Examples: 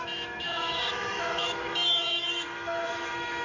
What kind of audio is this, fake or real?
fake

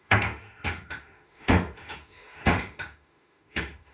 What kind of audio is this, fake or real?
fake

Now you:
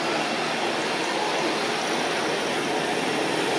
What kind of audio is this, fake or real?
real